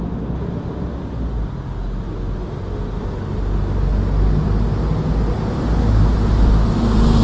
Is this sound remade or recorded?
recorded